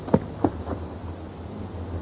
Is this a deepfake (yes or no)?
no